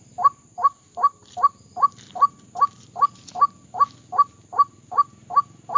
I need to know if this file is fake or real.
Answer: real